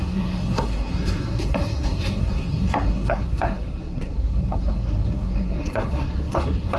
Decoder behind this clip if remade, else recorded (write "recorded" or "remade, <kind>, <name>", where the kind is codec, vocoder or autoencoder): remade, codec, SNAC